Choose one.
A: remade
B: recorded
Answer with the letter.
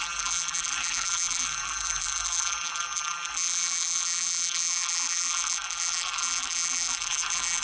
A